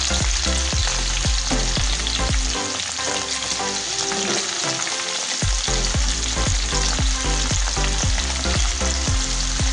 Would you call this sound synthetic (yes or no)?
no